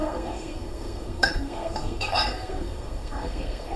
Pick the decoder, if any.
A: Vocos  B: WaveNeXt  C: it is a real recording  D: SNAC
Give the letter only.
D